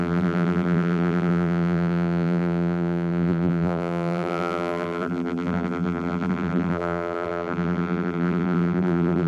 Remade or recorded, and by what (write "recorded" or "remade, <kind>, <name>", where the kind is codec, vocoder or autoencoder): remade, vocoder, BigVGAN v2